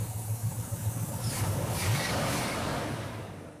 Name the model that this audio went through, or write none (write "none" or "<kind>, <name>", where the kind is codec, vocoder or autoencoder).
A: codec, DAC